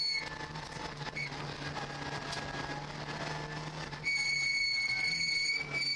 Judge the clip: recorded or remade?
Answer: recorded